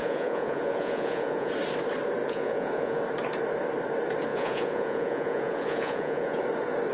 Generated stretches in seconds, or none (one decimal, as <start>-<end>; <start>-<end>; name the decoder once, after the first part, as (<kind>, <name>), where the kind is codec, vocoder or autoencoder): 0.0-1.5 (vocoder, Vocos); 2.2-3.0; 4.3-6.4